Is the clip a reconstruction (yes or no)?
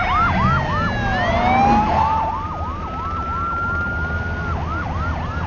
no